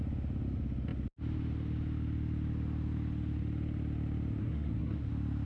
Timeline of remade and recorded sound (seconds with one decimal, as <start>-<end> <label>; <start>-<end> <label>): 0.0-4.4 recorded; 4.4-5.1 remade; 5.1-5.5 recorded